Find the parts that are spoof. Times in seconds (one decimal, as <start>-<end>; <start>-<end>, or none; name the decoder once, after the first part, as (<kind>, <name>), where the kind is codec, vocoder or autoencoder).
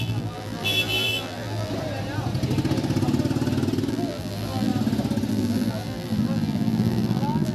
0.0-1.7 (vocoder, BigVGAN v2); 3.9-4.7; 5.3-7.5